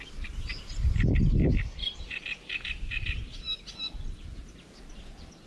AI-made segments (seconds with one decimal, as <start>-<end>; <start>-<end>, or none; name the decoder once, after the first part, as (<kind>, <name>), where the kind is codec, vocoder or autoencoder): none